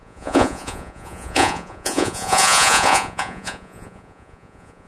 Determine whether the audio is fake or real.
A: fake